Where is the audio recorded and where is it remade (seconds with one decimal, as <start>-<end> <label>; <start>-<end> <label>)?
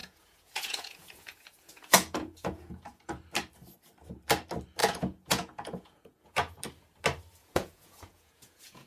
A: 0.0-3.1 remade; 3.1-4.8 recorded; 4.8-6.6 remade; 6.6-7.4 recorded; 7.4-8.9 remade